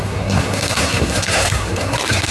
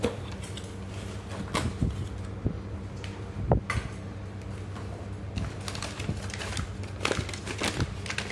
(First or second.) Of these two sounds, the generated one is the first